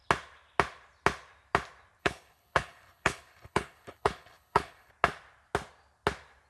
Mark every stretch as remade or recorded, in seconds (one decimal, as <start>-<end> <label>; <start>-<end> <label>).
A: 0.0-2.0 recorded; 2.0-4.9 remade; 4.9-6.5 recorded